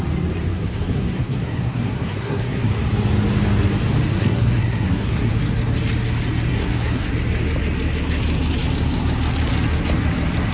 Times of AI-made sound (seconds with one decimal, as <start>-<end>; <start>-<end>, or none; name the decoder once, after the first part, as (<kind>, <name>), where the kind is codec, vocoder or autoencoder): 0.5-2.7 (codec, SNAC); 4.1-5.3; 6.5-7.1